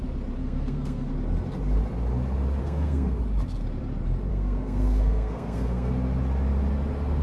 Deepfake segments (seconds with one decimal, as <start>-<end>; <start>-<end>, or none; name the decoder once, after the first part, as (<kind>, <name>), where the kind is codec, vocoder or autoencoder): 0.4-1.1 (codec, SNAC); 2.6-3.2; 4.3-5.9